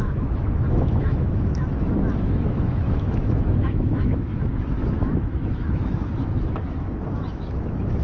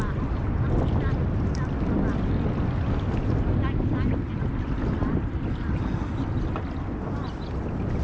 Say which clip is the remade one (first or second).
first